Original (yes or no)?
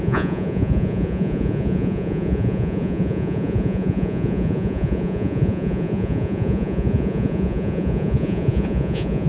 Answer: no